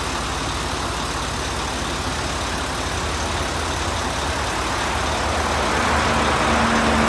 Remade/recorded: recorded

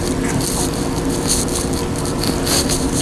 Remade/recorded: recorded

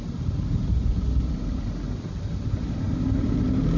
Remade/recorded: recorded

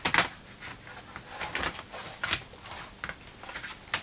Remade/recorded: recorded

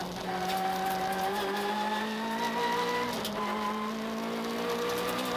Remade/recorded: recorded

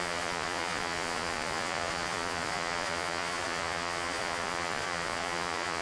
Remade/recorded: remade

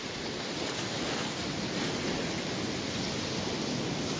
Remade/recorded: recorded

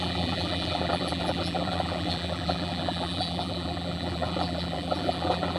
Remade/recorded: remade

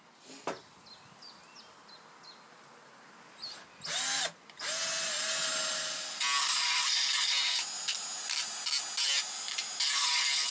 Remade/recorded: recorded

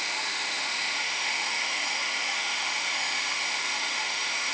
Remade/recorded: remade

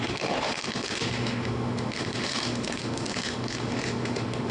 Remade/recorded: remade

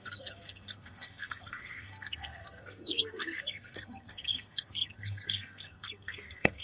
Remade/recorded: remade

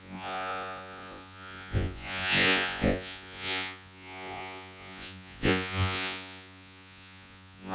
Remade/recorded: remade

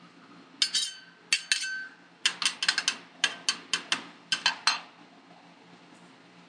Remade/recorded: recorded